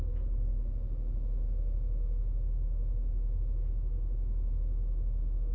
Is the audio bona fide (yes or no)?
yes